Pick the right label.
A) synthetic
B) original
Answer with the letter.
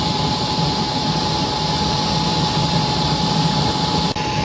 B